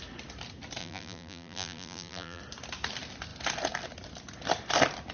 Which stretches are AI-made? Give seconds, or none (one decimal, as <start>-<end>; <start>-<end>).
0.8-2.4